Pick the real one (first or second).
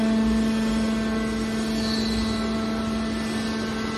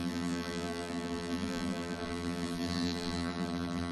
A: first